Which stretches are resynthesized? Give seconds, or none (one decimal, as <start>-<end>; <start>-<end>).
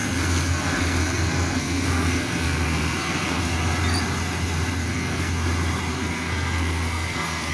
0.0-3.4; 4.8-5.3; 5.9-7.5